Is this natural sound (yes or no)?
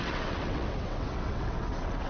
no